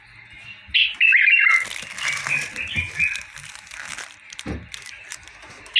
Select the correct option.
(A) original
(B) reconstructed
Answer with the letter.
A